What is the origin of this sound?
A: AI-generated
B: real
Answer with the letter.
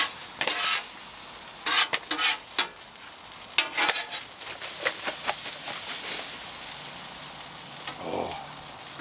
B